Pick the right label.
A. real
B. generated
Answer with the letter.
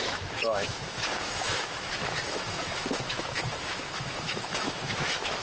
B